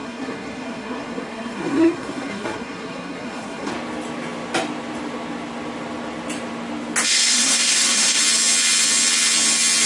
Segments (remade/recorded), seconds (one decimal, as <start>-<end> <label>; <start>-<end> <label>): 0.0-3.7 remade; 3.7-7.1 recorded; 7.1-8.2 remade; 8.2-9.9 recorded